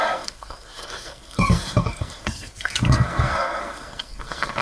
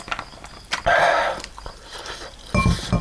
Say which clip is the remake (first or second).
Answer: first